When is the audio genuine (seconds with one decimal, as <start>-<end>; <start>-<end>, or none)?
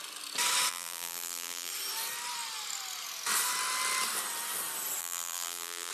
0.0-0.7; 1.7-5.0